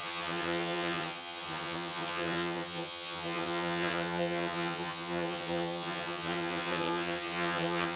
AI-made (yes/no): yes